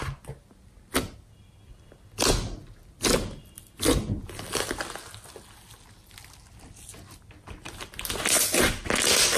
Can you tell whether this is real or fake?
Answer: real